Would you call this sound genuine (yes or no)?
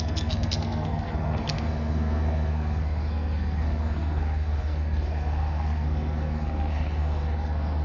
no